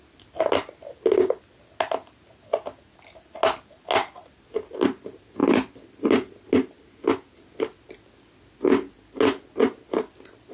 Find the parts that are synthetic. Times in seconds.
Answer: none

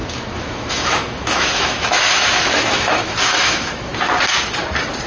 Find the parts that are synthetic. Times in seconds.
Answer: 0.0-3.9

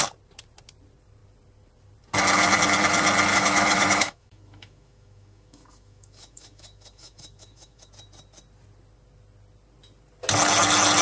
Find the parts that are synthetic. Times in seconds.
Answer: 3.3-7.9

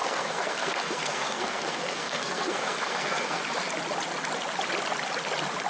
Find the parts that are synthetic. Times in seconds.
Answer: 0.0-3.4